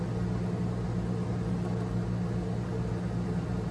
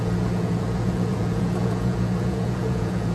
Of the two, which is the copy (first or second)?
second